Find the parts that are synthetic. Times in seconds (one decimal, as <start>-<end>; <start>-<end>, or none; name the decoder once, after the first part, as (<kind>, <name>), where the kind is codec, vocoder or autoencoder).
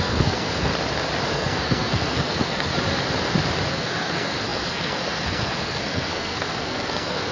0.0-0.7 (codec, SNAC); 1.3-2.7; 3.7-7.3